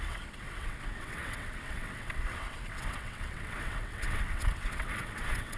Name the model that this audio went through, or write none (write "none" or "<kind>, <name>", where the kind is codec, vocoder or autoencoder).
vocoder, WaveNeXt